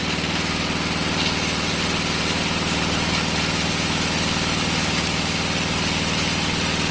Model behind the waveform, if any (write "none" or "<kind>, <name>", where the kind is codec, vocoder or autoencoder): none